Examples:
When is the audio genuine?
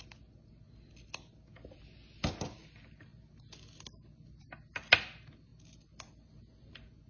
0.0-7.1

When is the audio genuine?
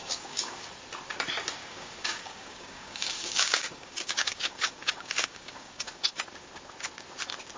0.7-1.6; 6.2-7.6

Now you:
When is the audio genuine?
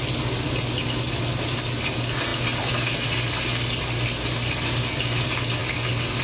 0.0-6.2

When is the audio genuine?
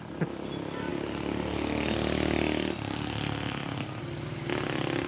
0.0-5.1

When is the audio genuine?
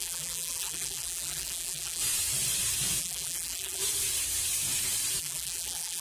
2.0-3.0; 3.8-5.2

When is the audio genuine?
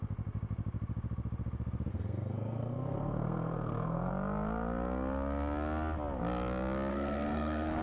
0.0-1.9; 4.1-6.9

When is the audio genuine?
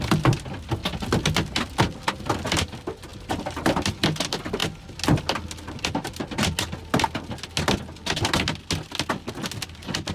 0.0-10.1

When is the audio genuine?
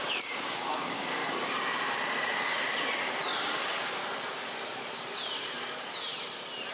1.2-3.6; 4.0-6.7